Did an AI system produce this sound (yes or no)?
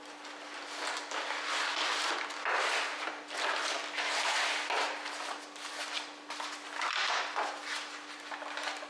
no